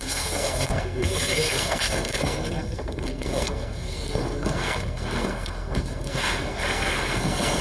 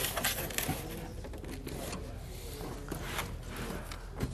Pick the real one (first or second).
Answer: second